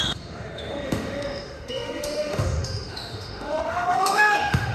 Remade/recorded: remade